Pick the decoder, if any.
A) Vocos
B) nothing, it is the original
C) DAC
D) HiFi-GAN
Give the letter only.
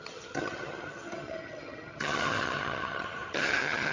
D